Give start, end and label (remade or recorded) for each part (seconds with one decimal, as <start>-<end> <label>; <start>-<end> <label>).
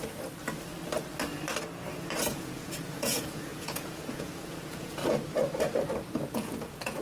0.0-2.3 recorded; 2.3-5.0 remade; 5.0-6.3 recorded; 6.3-7.0 remade